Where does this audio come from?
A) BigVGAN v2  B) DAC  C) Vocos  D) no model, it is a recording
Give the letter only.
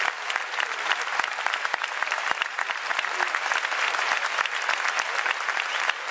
D